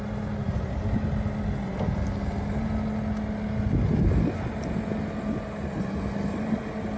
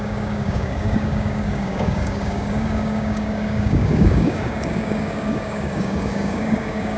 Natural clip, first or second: first